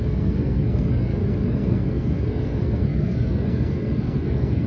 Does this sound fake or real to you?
fake